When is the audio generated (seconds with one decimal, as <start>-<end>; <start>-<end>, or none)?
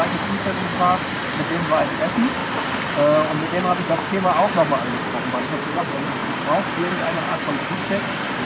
0.0-0.7; 1.5-2.4; 4.0-8.4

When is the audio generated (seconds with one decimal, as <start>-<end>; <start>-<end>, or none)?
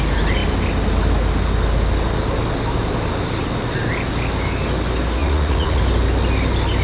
5.2-5.8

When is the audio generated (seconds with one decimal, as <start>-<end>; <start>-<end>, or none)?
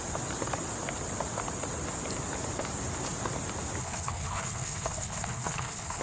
3.8-6.0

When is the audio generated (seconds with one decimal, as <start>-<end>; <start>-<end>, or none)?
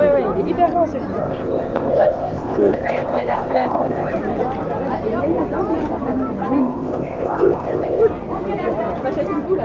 1.2-4.1; 6.6-8.0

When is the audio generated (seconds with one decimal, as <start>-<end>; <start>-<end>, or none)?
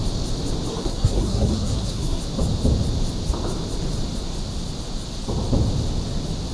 0.7-2.2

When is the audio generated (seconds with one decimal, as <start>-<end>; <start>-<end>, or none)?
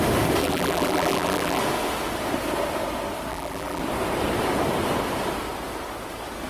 0.4-1.6; 3.3-3.8